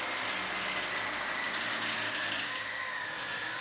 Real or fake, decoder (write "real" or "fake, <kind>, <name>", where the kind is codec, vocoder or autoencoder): real